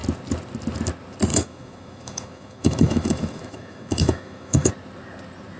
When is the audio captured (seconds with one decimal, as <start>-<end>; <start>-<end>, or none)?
0.0-1.3; 4.7-5.6